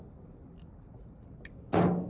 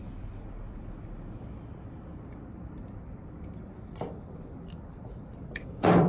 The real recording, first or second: first